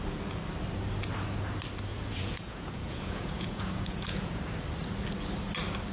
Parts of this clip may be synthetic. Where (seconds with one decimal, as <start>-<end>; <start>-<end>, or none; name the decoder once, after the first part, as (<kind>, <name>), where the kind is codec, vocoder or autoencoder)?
1.9-4.4 (vocoder, Vocos)